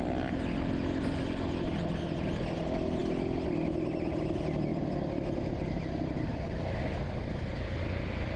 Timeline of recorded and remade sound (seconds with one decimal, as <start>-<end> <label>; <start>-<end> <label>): 0.0-8.4 recorded